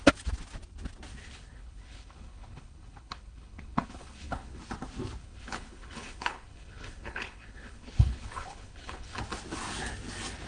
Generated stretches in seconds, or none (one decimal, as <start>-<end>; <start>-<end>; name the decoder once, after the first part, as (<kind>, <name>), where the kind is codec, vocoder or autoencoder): 1.2-4.6 (codec, HILCodec); 5.2-9.2